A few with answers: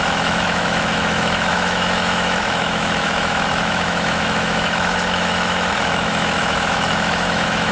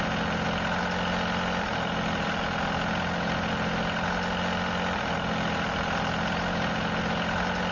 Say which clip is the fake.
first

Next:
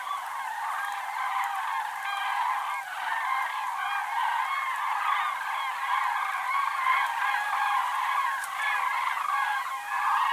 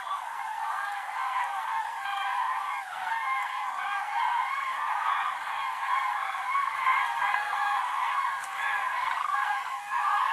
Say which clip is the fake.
second